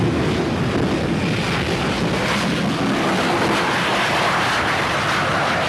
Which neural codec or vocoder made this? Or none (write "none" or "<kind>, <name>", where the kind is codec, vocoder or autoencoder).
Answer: none